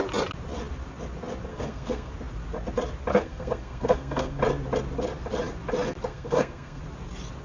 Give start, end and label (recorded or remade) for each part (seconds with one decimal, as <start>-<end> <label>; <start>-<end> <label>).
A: 0.0-1.5 recorded; 1.5-2.1 remade; 2.1-3.1 recorded; 3.1-4.4 remade; 4.4-6.1 recorded; 6.1-6.8 remade; 6.8-7.4 recorded